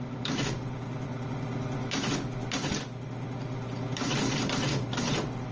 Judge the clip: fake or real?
real